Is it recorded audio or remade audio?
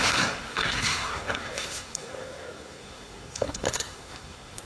remade